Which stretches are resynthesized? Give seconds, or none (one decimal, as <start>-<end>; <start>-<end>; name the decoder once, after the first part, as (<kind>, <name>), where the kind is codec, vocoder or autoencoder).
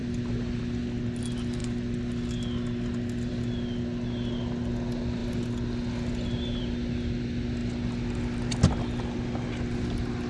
none